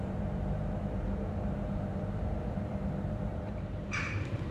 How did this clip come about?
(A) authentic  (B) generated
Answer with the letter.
B